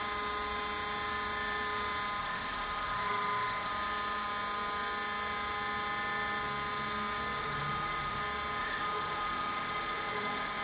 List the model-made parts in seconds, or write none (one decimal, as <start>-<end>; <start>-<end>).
2.2-3.7; 7.4-8.2; 8.6-10.6